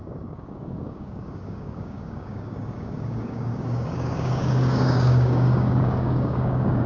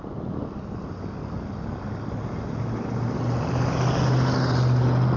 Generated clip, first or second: first